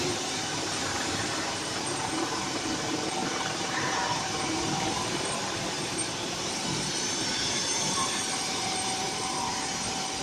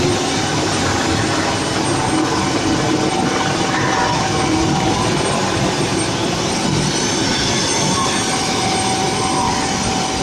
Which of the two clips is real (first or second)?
second